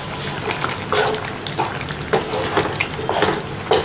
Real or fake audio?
real